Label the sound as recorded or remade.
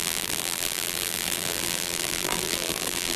remade